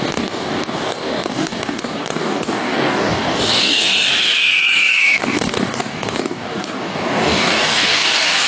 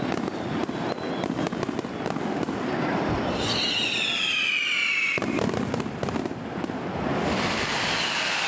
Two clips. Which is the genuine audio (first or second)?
second